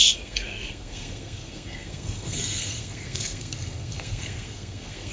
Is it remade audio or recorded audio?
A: remade